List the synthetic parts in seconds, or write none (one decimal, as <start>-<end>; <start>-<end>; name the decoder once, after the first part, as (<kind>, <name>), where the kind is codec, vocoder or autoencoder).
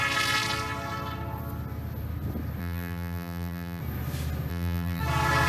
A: 2.6-3.8 (vocoder, BigVGAN v2); 4.5-5.0